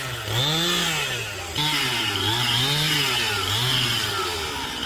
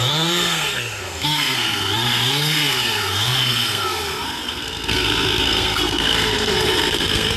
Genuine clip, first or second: first